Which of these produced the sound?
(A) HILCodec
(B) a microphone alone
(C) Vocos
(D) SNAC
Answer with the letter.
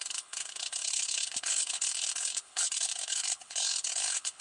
A